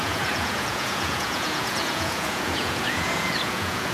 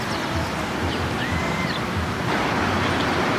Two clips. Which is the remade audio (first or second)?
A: first